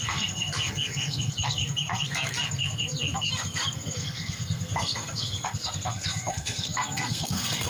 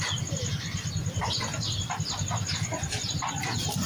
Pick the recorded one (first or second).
second